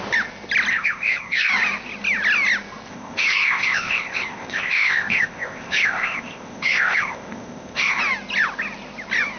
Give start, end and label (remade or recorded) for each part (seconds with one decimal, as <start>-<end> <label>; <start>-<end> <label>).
0.0-0.7 recorded; 0.7-1.5 remade; 1.5-2.9 recorded; 2.9-8.0 remade; 8.0-9.4 recorded